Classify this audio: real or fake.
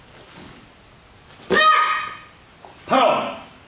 real